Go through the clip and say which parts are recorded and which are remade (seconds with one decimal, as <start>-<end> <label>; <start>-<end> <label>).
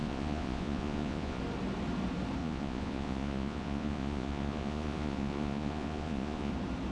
0.0-1.4 remade; 1.4-2.4 recorded; 2.4-6.5 remade; 6.5-6.9 recorded